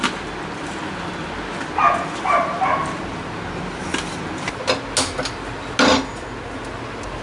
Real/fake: real